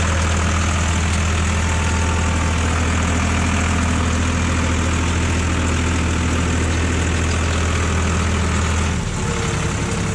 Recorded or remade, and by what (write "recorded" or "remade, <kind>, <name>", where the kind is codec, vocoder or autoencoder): recorded